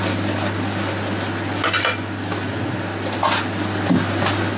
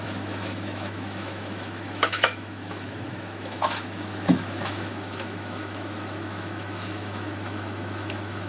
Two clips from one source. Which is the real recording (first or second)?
first